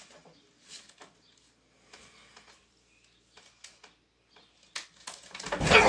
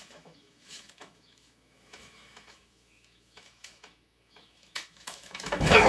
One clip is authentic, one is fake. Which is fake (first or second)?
second